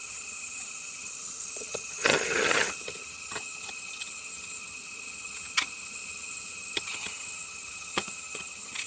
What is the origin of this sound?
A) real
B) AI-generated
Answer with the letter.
B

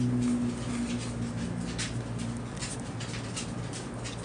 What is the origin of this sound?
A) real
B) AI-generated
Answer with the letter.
A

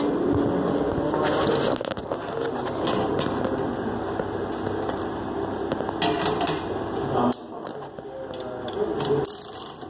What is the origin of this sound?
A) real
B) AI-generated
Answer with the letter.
A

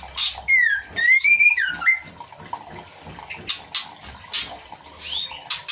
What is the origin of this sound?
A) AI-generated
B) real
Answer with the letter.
B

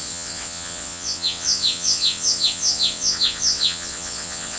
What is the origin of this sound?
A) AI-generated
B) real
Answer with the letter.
A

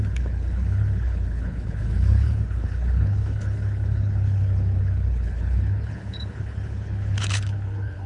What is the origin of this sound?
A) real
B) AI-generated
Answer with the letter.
B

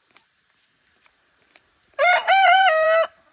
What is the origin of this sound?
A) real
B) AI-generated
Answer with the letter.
B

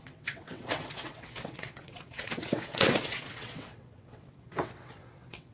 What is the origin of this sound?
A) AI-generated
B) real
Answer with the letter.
A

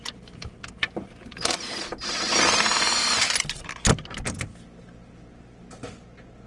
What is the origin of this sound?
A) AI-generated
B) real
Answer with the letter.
B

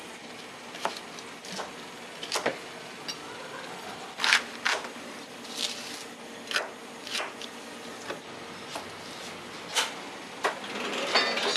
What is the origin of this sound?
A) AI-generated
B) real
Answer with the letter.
B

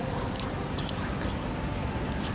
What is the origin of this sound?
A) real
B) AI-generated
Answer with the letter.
A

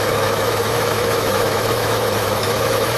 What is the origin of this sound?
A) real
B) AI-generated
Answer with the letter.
B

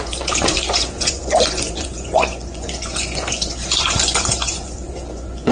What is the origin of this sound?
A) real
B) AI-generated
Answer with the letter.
B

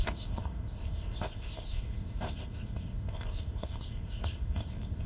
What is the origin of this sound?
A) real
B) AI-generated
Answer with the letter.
B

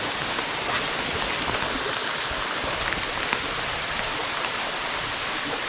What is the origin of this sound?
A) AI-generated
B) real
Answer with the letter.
A